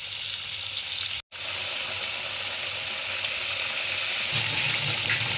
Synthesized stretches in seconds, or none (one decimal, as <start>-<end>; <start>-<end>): none